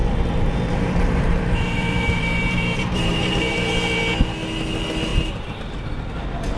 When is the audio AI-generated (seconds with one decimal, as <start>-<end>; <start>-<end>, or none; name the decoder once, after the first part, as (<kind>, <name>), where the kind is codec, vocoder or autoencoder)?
0.0-4.0 (vocoder, BigVGAN v2); 5.1-5.6